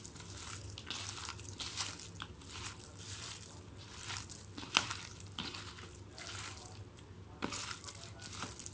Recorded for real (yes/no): yes